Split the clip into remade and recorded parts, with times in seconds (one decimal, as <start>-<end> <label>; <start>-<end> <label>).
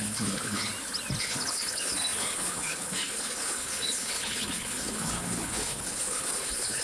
0.0-0.7 remade; 0.7-1.2 recorded; 1.2-6.8 remade